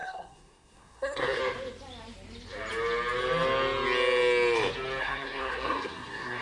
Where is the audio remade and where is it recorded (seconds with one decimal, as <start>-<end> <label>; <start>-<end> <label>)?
0.0-1.4 remade; 1.4-5.0 recorded; 5.0-6.4 remade